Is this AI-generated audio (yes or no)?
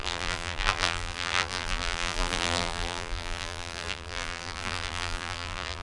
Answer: yes